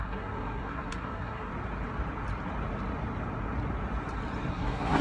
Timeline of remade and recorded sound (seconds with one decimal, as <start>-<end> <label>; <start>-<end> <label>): 0.0-1.5 remade; 1.5-4.5 recorded; 4.5-5.0 remade